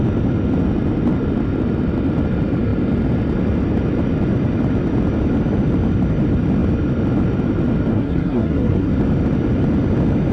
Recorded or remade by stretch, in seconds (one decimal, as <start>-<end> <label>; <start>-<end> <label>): 0.0-7.9 recorded; 7.9-8.9 remade; 8.9-10.3 recorded